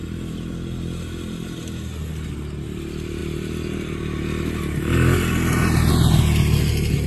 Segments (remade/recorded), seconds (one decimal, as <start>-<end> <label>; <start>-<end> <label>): 0.0-7.1 recorded